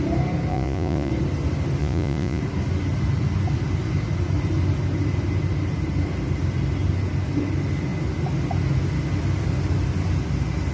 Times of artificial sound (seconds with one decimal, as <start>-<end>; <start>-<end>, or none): 0.5-1.1; 1.8-2.4